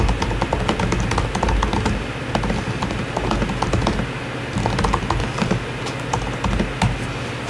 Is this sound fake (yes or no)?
no